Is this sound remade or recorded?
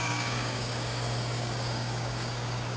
remade